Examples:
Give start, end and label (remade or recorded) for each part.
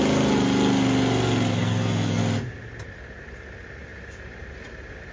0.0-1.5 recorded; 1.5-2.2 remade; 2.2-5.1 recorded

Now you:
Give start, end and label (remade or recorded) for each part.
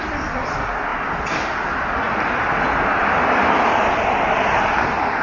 0.0-5.2 recorded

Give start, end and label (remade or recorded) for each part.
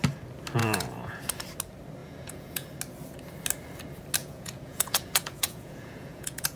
0.0-0.6 recorded; 0.6-1.2 remade; 1.2-2.0 recorded; 2.0-2.7 remade; 2.7-4.2 recorded; 4.2-6.6 remade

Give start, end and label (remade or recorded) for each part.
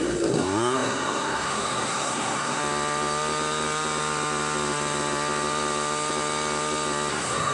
0.0-2.6 remade; 2.6-7.1 recorded; 7.1-7.5 remade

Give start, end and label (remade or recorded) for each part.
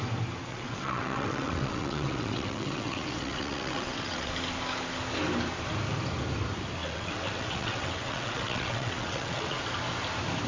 0.0-0.5 recorded; 0.5-4.3 remade; 4.3-6.8 recorded; 6.8-9.6 remade; 9.6-10.5 recorded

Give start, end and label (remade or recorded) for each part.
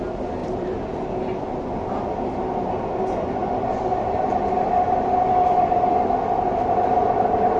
0.0-0.4 recorded; 0.4-1.1 remade; 1.1-3.4 recorded; 3.4-5.8 remade; 5.8-7.6 recorded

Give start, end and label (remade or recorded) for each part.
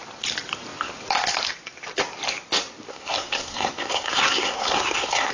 0.0-2.9 recorded; 2.9-5.3 remade